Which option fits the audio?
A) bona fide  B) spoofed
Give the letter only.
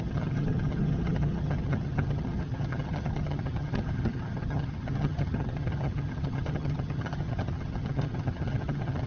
B